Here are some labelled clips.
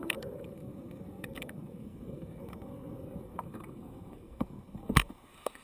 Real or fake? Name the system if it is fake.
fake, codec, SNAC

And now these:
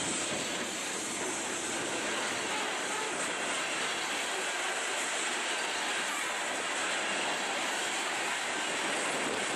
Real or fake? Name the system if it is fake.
real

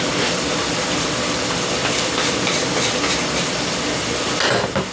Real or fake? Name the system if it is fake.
real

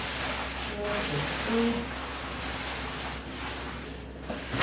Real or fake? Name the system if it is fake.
real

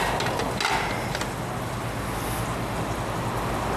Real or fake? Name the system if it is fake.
real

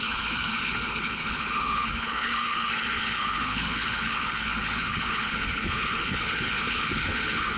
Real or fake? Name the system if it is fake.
fake, codec, HILCodec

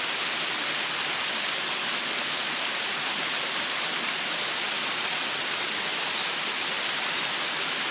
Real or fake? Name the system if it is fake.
real